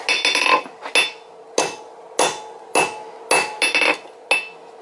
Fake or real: real